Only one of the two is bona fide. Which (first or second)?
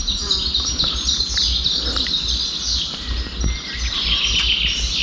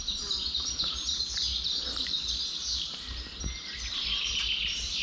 first